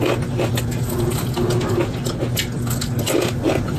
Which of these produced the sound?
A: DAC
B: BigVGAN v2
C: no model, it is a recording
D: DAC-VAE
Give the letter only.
C